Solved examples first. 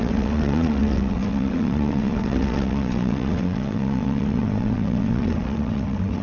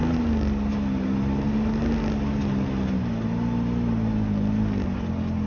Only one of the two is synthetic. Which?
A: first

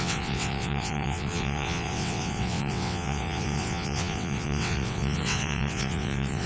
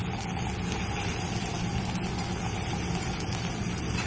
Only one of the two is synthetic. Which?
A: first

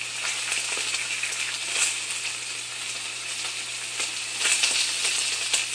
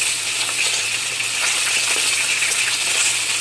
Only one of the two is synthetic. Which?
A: second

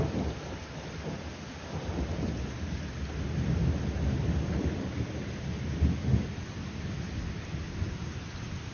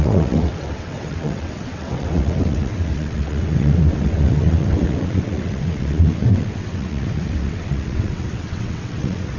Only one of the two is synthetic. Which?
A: second